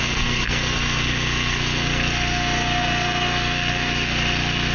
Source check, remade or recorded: remade